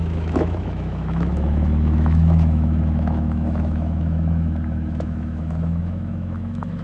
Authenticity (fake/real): fake